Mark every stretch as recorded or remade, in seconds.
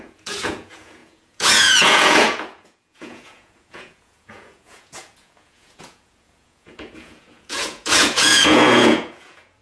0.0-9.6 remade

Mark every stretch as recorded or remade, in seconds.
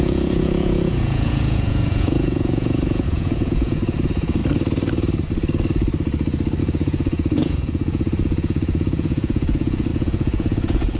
0.0-4.4 remade; 4.4-6.6 recorded; 6.6-11.0 remade